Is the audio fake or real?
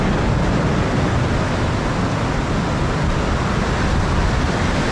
real